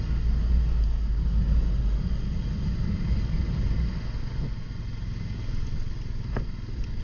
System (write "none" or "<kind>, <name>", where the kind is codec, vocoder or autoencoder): none